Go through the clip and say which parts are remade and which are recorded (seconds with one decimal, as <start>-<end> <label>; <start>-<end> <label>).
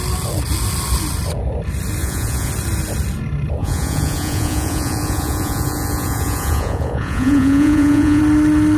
0.0-2.0 recorded; 2.0-2.5 remade; 2.5-3.6 recorded; 3.6-8.2 remade; 8.2-8.8 recorded